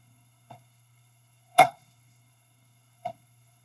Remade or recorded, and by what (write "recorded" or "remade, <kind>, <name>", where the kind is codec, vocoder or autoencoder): remade, codec, SNAC